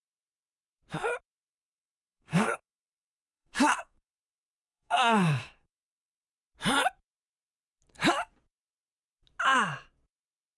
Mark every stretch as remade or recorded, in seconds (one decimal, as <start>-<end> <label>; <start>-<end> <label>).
0.0-1.5 recorded; 1.5-6.2 remade; 6.2-10.6 recorded